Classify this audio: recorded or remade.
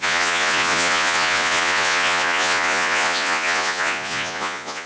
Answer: remade